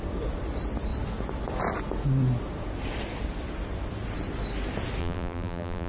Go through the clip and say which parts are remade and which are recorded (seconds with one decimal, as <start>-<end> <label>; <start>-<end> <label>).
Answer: 0.0-5.0 recorded; 5.0-5.9 remade

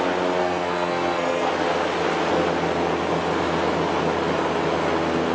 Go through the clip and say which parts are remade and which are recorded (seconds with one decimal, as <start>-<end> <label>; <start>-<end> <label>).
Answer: 0.0-0.4 recorded; 0.4-1.5 remade; 1.5-5.3 recorded

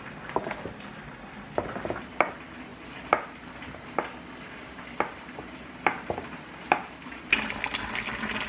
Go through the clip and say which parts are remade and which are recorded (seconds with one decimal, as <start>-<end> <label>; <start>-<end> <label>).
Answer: 0.0-8.5 recorded

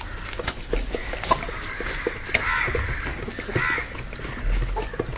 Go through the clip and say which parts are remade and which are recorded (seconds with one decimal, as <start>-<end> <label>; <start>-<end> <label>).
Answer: 0.0-5.2 recorded

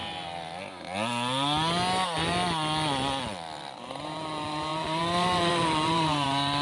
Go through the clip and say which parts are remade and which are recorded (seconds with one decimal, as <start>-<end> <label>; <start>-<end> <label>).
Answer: 0.0-4.0 recorded; 4.0-6.6 remade

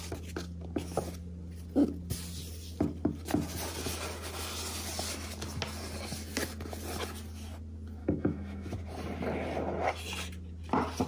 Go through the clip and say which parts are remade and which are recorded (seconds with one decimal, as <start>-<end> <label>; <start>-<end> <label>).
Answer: 0.0-8.0 recorded; 8.0-8.7 remade; 8.7-11.1 recorded

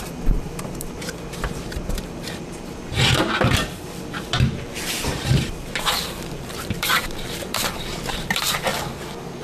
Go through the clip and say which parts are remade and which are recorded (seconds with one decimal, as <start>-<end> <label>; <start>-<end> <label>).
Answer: 0.0-8.7 remade; 8.7-9.4 recorded

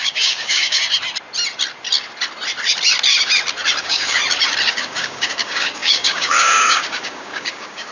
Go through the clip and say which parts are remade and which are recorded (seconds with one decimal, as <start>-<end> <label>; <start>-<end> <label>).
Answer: 0.0-0.8 remade; 0.8-3.8 recorded; 3.8-4.2 remade; 4.2-4.7 recorded; 4.7-7.9 remade